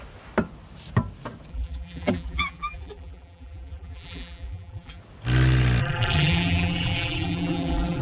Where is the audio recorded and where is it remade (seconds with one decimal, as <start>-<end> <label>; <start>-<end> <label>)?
0.0-1.5 recorded; 1.5-5.0 remade; 5.0-5.8 recorded; 5.8-8.0 remade